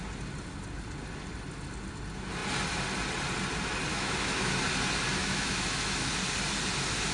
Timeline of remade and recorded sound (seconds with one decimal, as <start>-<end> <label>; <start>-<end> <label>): 0.0-3.9 recorded; 3.9-4.6 remade; 4.6-5.2 recorded; 5.2-6.1 remade; 6.1-7.1 recorded